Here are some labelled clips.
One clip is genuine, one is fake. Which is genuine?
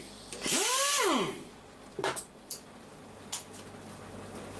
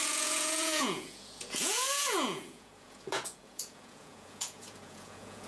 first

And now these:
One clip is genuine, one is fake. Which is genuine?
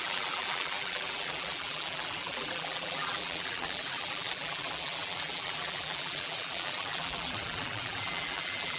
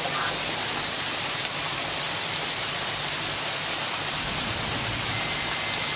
second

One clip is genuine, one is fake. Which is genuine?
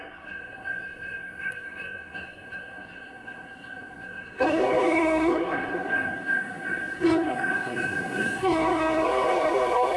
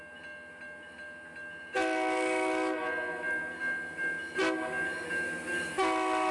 second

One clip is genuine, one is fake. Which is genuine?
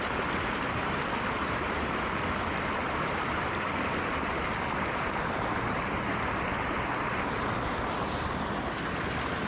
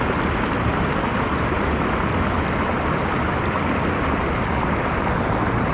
second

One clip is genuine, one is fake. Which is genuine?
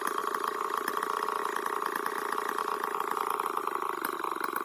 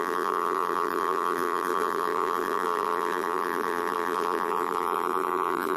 first